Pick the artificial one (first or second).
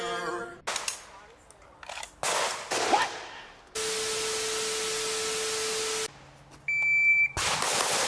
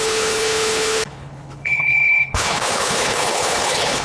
second